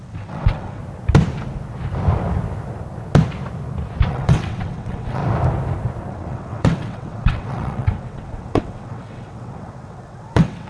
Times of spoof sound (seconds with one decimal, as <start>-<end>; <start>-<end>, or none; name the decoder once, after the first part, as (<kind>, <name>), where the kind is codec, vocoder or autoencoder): 0.0-0.8 (vocoder, WaveNeXt); 4.1-5.2; 6.1-10.7